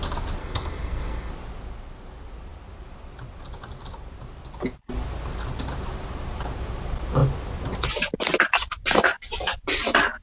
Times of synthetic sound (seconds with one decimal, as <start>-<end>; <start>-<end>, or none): 0.4-1.3